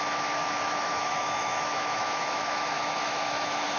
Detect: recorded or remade remade